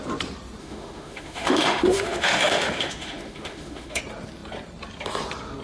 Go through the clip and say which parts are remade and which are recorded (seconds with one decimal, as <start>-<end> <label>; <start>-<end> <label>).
0.0-0.6 recorded; 0.6-4.0 remade; 4.0-5.6 recorded